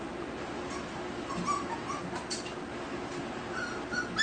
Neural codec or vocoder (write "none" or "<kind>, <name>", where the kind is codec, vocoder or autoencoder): none